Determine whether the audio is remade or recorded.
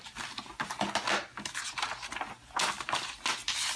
recorded